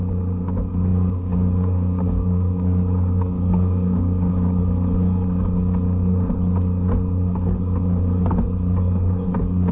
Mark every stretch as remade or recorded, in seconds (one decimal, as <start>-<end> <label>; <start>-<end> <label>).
0.0-0.9 recorded; 0.9-4.6 remade; 4.6-9.7 recorded